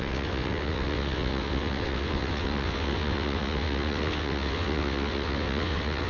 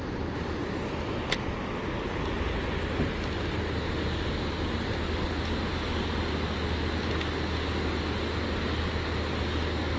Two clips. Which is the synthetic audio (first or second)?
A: first